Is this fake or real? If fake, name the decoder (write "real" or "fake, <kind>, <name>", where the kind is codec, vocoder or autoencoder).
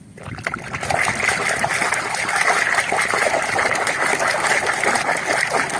real